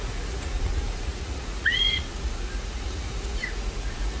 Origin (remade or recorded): remade